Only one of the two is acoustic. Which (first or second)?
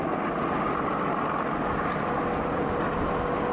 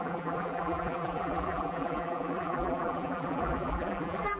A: first